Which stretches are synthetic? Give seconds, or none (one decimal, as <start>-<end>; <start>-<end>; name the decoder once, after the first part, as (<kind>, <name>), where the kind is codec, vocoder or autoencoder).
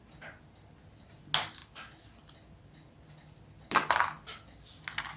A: none